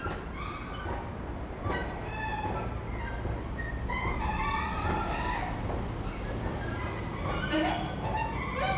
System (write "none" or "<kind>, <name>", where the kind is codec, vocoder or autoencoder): none